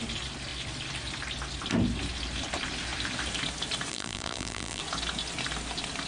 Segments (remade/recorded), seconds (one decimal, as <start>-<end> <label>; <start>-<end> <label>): 0.0-3.9 recorded; 3.9-4.8 remade; 4.8-6.1 recorded